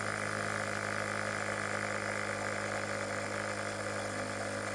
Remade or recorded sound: recorded